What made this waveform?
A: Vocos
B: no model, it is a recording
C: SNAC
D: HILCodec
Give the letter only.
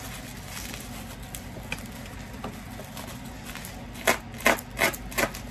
B